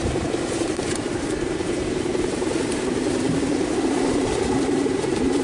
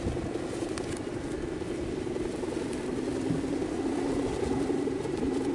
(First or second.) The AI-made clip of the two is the first